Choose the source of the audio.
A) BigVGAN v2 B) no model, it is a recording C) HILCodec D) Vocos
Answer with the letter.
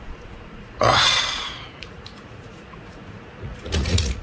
D